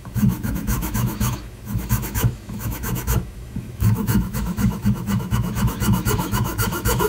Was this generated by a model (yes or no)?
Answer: yes